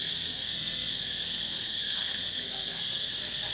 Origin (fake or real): fake